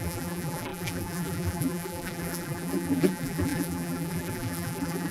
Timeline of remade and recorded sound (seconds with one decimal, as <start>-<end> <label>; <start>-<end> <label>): 0.0-5.1 remade